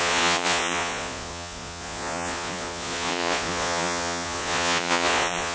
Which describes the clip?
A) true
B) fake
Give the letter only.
B